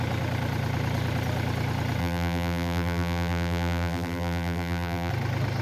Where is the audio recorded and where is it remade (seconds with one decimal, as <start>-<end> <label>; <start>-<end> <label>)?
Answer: 0.0-2.0 recorded; 2.0-5.1 remade; 5.1-5.6 recorded